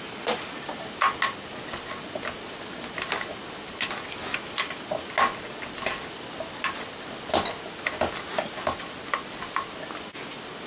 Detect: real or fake real